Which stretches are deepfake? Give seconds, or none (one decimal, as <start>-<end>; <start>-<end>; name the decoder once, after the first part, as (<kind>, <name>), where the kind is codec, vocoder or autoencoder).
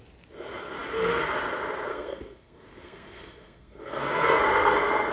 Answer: 1.9-5.1 (codec, SNAC)